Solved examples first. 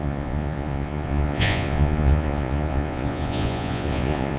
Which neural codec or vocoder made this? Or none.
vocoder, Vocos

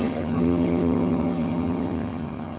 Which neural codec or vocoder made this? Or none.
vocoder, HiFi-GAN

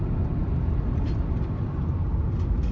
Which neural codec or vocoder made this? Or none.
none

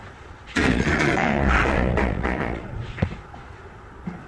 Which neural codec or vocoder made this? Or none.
vocoder, Vocos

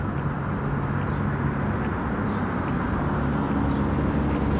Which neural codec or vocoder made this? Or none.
none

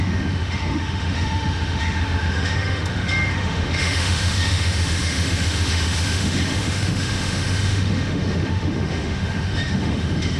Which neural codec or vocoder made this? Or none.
autoencoder, DAC-VAE